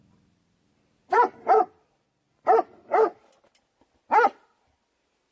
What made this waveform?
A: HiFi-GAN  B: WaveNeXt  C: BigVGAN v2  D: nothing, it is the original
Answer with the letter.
D